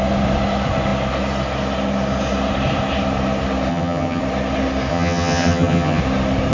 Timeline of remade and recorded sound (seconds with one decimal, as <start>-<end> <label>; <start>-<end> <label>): 0.0-3.7 recorded; 3.7-4.2 remade; 4.2-4.9 recorded; 4.9-6.0 remade; 6.0-6.5 recorded